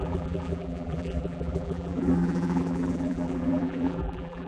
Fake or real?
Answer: fake